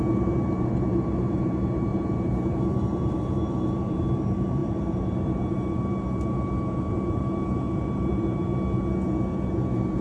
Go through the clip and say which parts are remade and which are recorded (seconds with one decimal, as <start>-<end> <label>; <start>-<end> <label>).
0.0-8.5 remade; 8.5-9.5 recorded; 9.5-10.0 remade